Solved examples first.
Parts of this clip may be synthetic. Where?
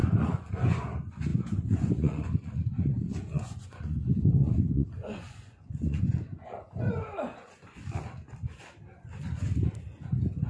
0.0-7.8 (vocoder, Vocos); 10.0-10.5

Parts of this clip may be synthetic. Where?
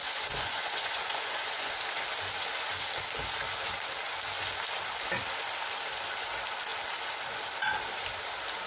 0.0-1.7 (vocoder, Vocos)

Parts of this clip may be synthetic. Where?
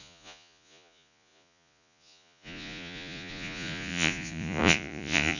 0.0-5.4 (vocoder, Vocos)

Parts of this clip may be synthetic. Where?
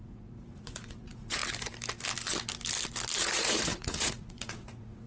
0.0-1.4 (vocoder, Vocos); 3.2-5.1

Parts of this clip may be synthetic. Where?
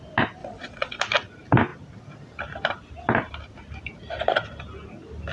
0.4-1.0 (vocoder, Vocos)